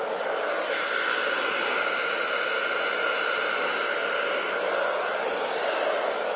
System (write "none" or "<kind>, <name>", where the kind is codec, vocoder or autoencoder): none